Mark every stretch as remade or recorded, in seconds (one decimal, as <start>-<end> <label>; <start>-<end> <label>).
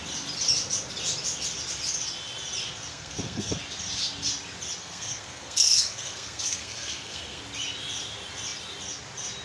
0.0-2.9 recorded; 2.9-3.6 remade; 3.6-4.8 recorded; 4.8-7.4 remade; 7.4-9.4 recorded